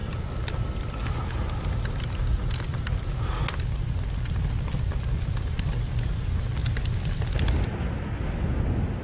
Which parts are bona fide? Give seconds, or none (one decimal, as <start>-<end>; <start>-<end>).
0.0-9.0